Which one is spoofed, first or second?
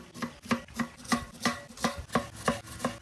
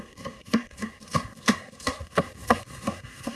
second